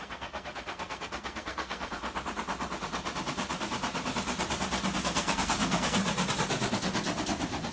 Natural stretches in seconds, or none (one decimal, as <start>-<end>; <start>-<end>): 2.0-5.0; 6.0-7.7